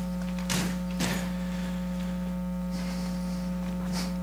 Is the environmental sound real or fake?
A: real